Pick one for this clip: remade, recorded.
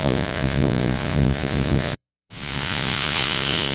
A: remade